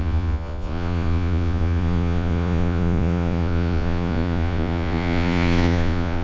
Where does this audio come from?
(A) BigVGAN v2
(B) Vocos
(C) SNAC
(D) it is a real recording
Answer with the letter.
B